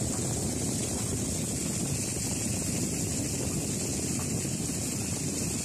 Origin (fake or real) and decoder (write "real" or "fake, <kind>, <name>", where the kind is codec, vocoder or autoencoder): real